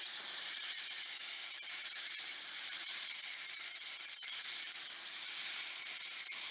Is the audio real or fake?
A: fake